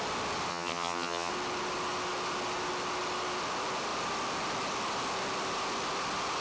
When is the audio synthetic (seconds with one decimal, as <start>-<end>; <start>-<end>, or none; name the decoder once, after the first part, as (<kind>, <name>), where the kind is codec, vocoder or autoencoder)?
0.5-1.3 (vocoder, HiFi-GAN)